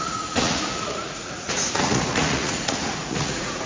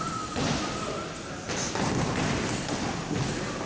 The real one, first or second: second